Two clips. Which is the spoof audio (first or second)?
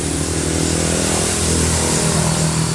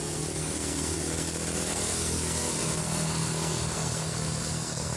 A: second